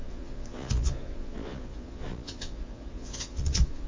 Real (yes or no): no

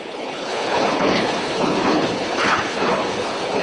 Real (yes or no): no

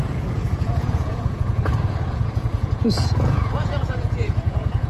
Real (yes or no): no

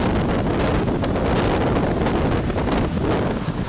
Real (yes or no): yes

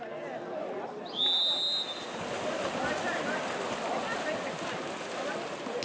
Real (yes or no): yes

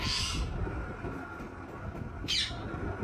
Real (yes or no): yes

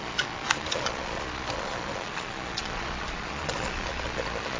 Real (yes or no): no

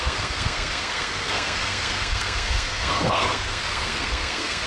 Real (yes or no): no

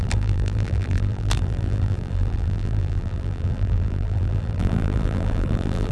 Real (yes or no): no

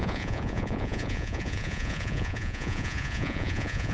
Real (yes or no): no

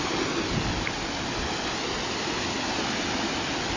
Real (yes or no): yes